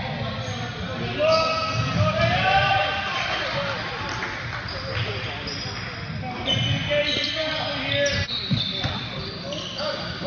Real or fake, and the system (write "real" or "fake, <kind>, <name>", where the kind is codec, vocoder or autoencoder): real